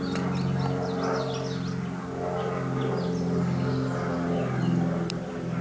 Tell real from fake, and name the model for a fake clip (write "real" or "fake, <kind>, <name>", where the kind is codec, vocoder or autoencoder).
real